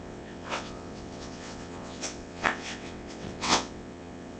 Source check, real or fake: fake